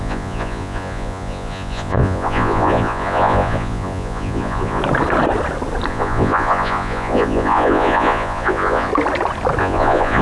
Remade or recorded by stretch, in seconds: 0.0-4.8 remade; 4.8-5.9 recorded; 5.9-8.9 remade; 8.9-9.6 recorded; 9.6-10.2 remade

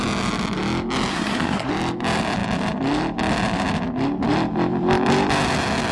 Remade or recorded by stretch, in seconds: 0.0-1.1 recorded; 1.1-1.7 remade; 1.7-5.9 recorded

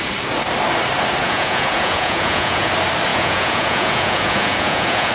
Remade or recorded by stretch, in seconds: 0.0-1.2 recorded; 1.2-2.7 remade; 2.7-3.1 recorded; 3.1-5.1 remade